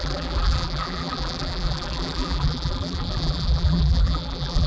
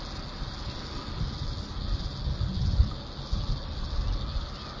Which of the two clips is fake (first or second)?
first